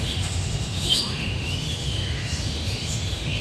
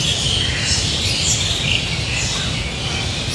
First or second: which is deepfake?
first